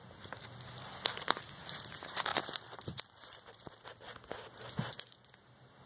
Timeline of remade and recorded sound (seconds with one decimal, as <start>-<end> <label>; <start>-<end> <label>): 0.0-0.6 remade; 0.6-2.3 recorded; 2.3-5.9 remade